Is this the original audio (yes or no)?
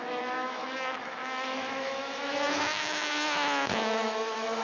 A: no